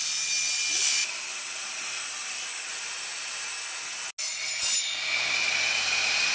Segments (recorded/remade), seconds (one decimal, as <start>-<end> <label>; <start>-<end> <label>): 0.0-1.0 recorded; 1.0-1.7 remade; 1.7-6.3 recorded